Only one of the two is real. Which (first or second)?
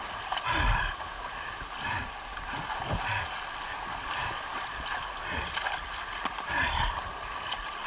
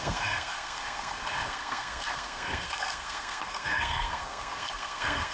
first